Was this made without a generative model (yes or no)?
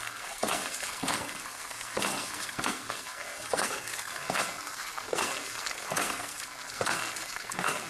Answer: no